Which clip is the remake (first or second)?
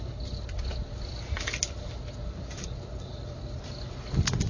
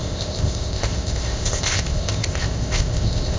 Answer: second